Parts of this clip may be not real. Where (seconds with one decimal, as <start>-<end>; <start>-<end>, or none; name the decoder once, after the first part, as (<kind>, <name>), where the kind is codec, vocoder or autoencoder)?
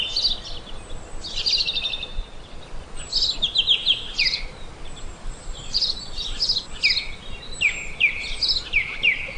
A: 2.1-2.6 (vocoder, BigVGAN v2); 3.8-6.8